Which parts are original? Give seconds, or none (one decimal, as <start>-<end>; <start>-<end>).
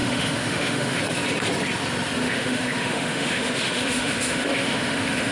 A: 1.0-2.2